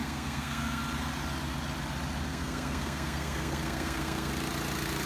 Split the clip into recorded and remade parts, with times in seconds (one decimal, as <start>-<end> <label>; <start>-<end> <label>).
0.0-0.8 remade; 0.8-2.3 recorded; 2.3-4.3 remade; 4.3-5.1 recorded